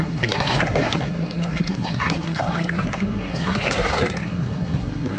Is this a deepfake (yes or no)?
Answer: yes